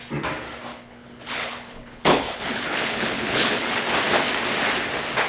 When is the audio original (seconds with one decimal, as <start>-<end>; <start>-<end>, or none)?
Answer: 0.0-0.7; 3.8-5.3